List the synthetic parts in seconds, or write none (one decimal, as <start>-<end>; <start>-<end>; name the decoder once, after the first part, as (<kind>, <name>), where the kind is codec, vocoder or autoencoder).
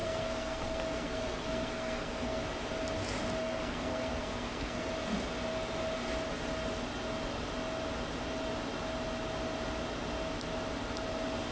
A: 0.0-2.4 (codec, SNAC); 3.4-4.9